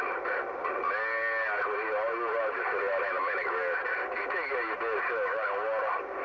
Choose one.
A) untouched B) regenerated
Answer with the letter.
A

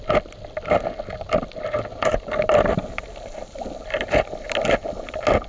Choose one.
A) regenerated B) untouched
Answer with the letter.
B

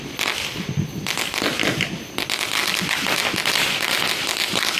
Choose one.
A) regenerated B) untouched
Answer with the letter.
B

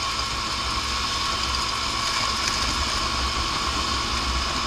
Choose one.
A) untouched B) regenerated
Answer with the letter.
A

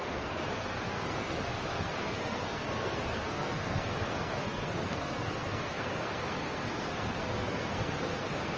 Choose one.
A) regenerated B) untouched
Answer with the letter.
A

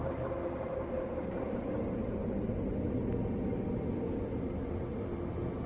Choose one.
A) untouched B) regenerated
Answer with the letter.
A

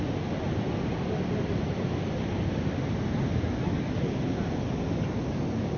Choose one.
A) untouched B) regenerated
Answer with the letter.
A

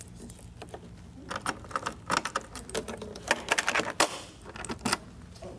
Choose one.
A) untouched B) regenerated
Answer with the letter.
A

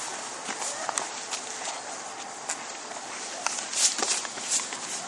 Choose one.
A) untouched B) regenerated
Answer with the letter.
A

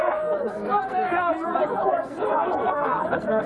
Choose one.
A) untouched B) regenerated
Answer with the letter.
B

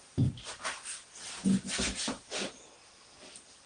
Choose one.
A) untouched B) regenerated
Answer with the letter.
A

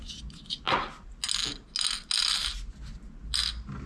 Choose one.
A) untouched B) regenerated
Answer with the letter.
A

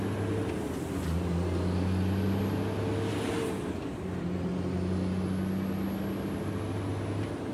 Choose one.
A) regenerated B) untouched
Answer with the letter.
B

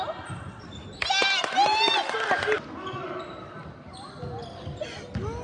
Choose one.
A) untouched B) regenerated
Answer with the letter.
A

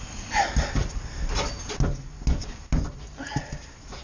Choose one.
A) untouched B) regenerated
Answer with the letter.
A